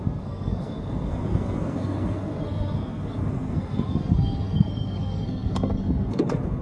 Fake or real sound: fake